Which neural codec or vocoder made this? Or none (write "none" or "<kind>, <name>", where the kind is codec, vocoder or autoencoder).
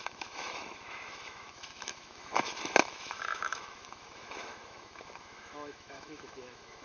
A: autoencoder, DAC-VAE